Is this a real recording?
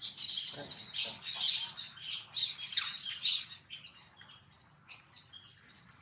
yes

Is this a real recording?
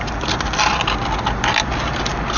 yes